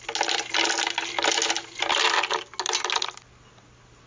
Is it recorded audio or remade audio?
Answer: recorded